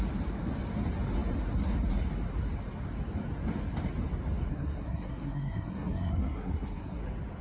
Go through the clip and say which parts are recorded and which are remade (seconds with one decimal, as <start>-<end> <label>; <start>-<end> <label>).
0.0-4.5 recorded; 4.5-7.0 remade; 7.0-7.4 recorded